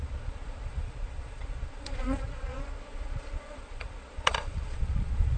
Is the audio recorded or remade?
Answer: remade